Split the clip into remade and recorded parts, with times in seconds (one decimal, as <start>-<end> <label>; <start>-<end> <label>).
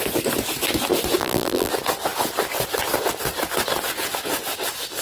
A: 0.0-1.2 recorded; 1.2-1.7 remade; 1.7-5.0 recorded